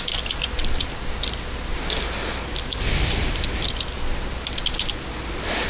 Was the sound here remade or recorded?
recorded